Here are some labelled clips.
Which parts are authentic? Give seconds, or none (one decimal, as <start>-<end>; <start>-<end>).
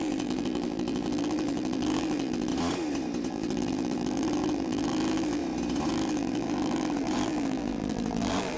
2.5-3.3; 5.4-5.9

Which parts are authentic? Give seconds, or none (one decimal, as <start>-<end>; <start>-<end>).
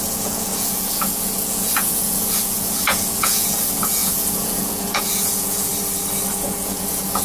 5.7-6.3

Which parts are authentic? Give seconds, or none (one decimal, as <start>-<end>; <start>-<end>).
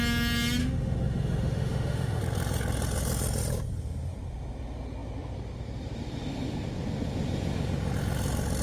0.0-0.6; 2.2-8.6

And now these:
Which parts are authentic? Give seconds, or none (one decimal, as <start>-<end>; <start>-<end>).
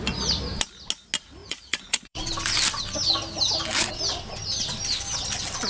0.0-1.4; 2.3-5.7